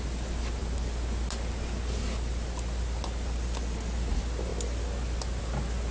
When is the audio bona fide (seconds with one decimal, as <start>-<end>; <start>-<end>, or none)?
0.0-5.9